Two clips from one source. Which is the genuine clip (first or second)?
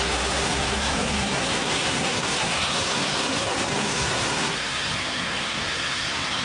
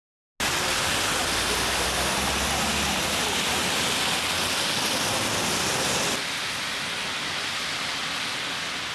second